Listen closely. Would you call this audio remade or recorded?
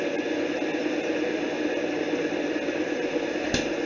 recorded